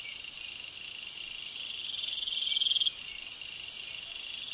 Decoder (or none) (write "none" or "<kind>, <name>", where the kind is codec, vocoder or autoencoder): none